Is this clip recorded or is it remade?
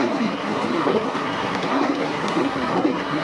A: remade